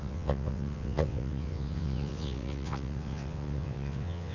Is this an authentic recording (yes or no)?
no